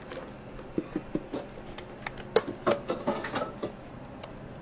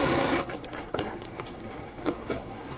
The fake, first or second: second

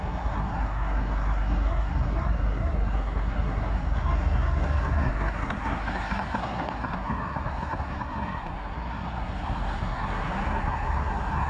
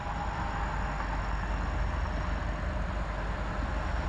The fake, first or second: first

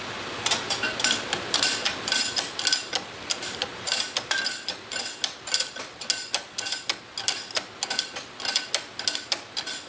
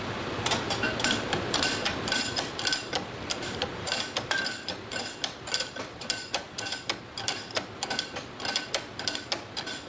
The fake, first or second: second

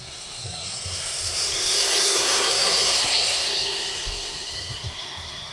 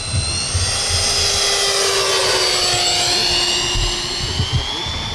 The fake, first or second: first